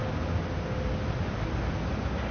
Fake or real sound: real